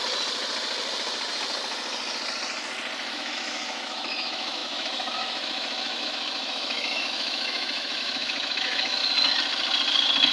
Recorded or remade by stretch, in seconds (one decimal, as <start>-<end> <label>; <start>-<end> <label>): 0.0-3.1 recorded; 3.1-9.0 remade; 9.0-10.3 recorded